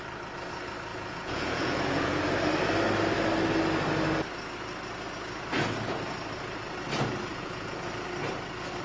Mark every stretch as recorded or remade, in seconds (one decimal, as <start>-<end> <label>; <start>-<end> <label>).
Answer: 0.0-0.9 recorded; 0.9-2.2 remade; 2.2-7.3 recorded; 7.3-7.9 remade; 7.9-8.8 recorded